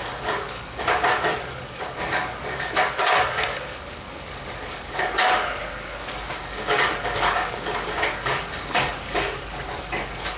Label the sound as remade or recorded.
remade